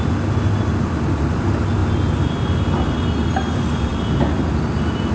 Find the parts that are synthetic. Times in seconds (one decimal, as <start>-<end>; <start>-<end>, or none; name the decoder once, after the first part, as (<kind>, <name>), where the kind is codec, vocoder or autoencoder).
none